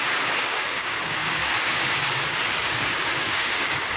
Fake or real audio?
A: fake